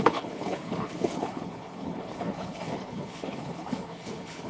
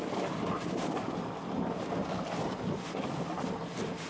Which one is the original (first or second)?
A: second